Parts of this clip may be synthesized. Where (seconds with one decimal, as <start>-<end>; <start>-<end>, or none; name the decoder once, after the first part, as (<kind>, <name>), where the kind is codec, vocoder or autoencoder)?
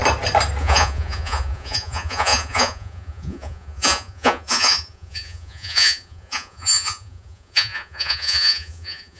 0.6-9.2 (vocoder, Vocos)